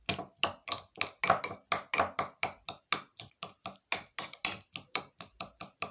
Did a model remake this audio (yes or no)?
no